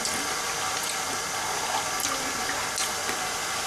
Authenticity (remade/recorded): recorded